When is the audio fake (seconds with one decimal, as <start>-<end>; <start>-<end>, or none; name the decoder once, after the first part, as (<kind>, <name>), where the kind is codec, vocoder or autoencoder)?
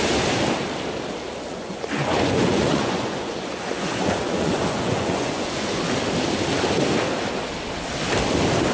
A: 1.5-5.8 (vocoder, Vocos)